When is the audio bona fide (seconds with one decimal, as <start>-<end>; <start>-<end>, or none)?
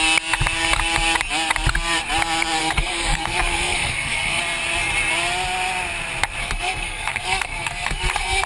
0.0-2.6; 4.4-6.4